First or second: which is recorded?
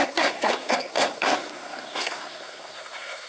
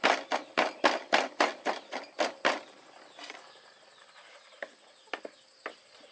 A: second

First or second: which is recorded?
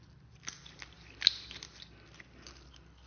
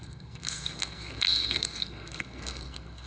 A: first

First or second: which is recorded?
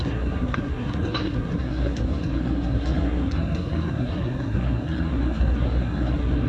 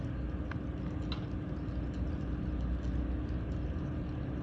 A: second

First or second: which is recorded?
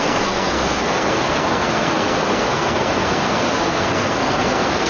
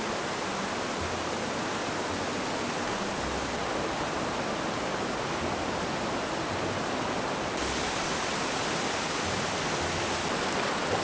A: second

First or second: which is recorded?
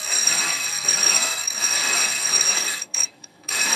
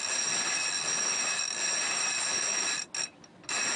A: second